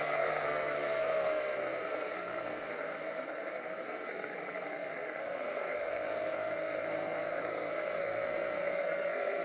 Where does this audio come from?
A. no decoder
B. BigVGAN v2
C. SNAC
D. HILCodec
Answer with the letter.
C